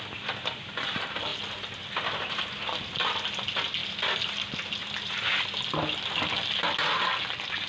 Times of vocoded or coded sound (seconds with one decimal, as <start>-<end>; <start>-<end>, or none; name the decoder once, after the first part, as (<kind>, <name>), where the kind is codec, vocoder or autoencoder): none

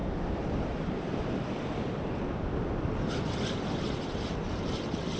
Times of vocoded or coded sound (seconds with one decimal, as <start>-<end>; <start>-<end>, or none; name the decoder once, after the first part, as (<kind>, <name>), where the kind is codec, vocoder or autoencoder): none

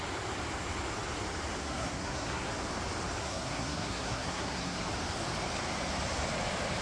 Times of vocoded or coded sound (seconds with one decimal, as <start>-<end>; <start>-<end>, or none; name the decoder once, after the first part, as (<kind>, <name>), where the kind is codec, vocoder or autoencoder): 1.6-2.5 (codec, SNAC); 3.2-4.8

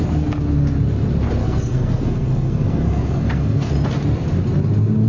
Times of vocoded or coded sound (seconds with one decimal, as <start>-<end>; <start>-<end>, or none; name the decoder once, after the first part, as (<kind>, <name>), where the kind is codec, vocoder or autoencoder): 1.4-3.7 (codec, SNAC)